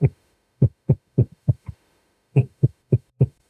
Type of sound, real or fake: fake